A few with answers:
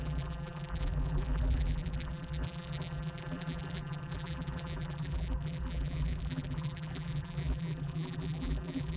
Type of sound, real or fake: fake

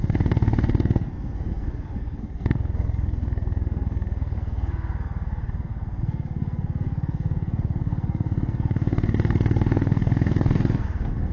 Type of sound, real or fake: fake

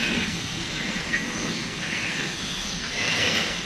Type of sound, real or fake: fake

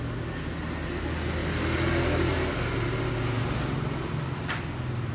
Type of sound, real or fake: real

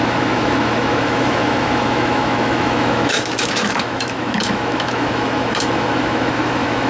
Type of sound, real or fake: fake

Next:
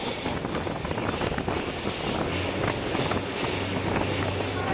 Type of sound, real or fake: real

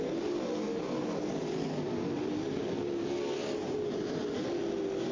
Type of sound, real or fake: real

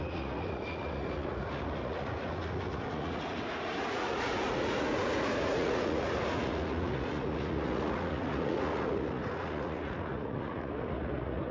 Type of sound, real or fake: fake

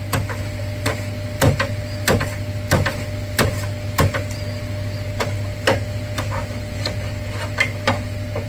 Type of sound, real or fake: real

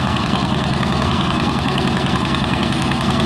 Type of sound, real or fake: fake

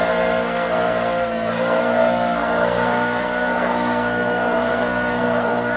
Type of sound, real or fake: fake